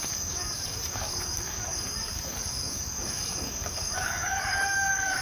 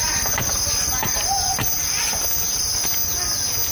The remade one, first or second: first